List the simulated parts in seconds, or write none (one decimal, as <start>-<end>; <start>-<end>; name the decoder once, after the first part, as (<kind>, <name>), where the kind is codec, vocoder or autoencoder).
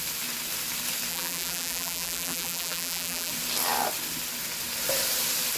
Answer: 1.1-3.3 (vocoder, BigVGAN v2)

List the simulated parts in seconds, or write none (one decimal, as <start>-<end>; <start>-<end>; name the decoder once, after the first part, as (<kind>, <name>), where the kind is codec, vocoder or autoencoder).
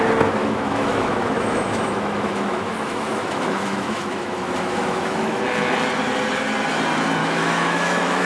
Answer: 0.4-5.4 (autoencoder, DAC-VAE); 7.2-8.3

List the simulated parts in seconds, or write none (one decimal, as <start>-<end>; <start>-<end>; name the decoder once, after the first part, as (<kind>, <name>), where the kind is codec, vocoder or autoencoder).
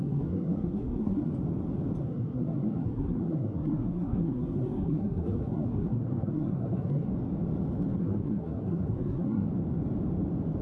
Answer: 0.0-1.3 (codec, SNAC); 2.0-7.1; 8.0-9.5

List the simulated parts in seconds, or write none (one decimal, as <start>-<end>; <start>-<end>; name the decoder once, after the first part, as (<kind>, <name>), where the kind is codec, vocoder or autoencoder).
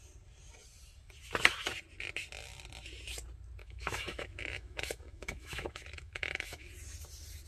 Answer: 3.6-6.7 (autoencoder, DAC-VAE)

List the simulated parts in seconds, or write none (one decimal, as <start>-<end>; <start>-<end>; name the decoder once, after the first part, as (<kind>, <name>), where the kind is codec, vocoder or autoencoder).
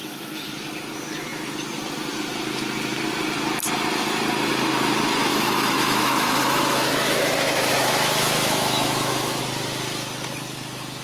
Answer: 0.0-0.5 (autoencoder, DAC-VAE); 5.3-9.4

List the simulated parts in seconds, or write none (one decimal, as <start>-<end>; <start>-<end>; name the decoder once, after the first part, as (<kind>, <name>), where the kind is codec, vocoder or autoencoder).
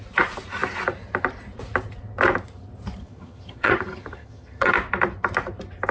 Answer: 3.0-4.7 (vocoder, HiFi-GAN)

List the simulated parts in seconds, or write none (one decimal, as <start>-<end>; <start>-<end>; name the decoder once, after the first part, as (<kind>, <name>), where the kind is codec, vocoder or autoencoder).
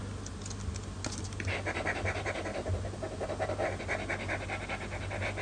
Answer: none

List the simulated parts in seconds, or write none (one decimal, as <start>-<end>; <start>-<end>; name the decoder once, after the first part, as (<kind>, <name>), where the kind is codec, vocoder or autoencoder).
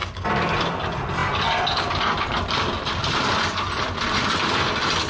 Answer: none